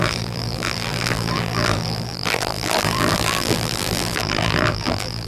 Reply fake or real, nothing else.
fake